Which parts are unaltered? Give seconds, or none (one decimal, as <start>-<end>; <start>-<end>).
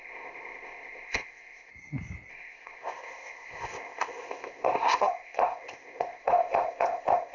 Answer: 1.7-2.3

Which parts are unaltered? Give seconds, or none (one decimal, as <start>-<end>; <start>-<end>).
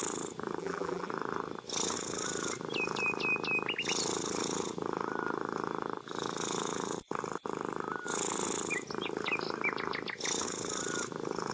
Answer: 0.0-0.6; 1.1-11.5